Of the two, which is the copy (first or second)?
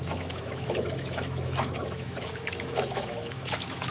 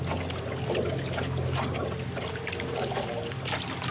first